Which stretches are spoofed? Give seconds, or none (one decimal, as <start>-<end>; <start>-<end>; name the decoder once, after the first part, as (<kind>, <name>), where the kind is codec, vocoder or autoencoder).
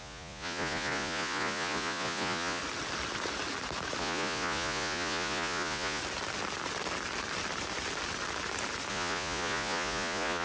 0.0-2.6 (vocoder, Vocos); 4.0-6.0; 8.9-10.4